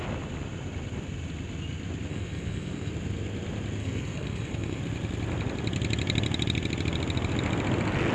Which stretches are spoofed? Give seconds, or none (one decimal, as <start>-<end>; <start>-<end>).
2.1-2.9; 3.8-4.8

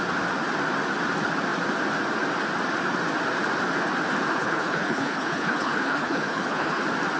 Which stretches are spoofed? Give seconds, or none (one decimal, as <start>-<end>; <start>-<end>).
4.3-6.8

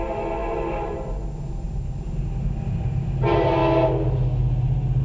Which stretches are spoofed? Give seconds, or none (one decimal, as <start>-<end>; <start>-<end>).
none

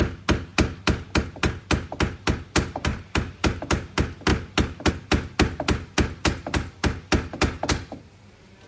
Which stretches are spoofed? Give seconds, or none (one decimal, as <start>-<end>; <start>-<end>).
2.9-3.6

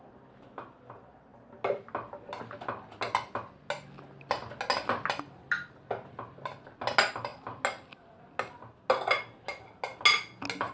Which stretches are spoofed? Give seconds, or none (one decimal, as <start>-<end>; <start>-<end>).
none

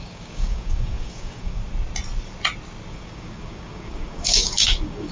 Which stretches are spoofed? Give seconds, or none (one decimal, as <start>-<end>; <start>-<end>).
0.0-1.6; 2.9-5.1

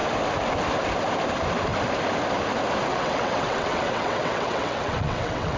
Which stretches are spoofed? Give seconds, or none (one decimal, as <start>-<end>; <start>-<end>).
2.9-5.6